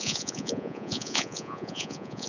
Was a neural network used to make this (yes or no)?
yes